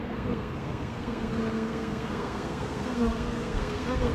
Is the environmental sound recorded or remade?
remade